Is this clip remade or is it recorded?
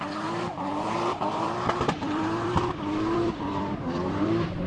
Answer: remade